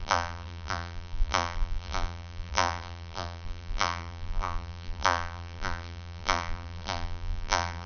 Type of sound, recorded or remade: remade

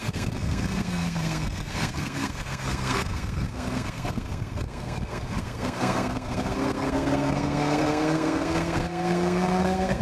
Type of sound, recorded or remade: remade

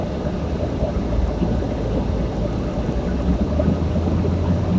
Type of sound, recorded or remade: recorded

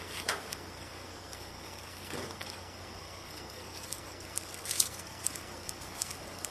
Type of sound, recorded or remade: remade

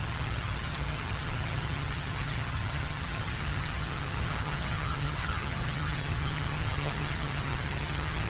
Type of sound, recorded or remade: remade